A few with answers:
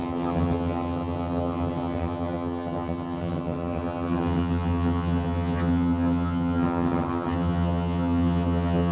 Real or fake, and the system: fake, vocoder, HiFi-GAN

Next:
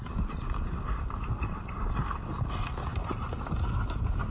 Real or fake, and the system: real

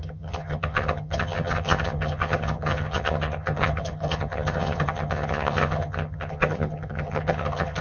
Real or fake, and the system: fake, vocoder, HiFi-GAN